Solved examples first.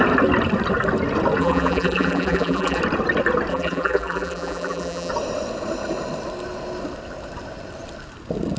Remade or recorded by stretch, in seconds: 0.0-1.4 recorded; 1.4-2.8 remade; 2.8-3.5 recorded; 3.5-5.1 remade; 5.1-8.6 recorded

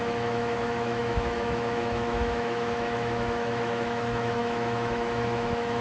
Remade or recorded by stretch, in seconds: 0.0-5.8 remade

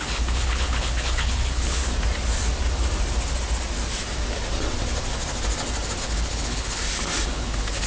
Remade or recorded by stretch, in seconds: 0.0-1.8 remade; 1.8-6.0 recorded; 6.0-6.8 remade; 6.8-7.3 recorded; 7.3-7.9 remade